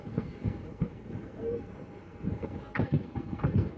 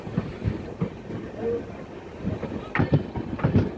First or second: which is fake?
first